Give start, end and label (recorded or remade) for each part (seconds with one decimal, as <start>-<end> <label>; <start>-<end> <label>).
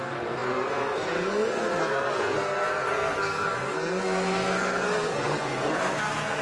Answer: 0.0-6.4 remade